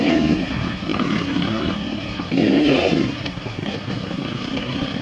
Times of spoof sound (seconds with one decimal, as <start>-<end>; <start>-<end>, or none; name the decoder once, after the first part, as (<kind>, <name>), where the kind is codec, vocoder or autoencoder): 0.0-5.0 (codec, SNAC)